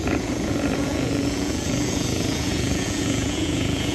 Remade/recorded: remade